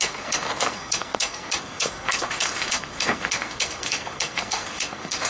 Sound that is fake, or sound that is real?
fake